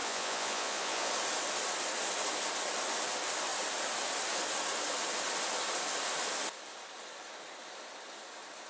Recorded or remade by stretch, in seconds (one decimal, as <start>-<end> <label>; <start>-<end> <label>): 0.0-1.1 remade; 1.1-8.7 recorded